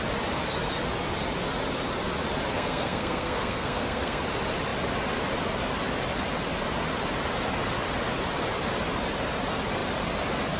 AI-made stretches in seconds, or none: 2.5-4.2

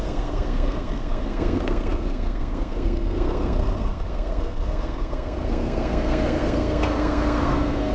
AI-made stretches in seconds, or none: 0.0-7.9

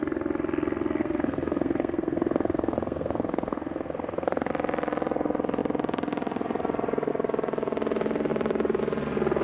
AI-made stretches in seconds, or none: 1.0-4.5

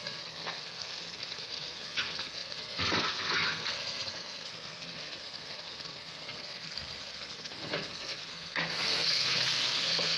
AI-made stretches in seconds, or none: 0.0-10.2

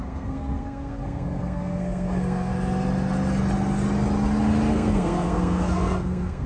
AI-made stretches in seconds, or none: 0.0-2.5; 4.7-6.5

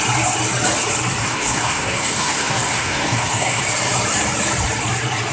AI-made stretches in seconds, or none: 1.2-3.6